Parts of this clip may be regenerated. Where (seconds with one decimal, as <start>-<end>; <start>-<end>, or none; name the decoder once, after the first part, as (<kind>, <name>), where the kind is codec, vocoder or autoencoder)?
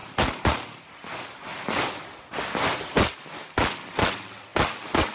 none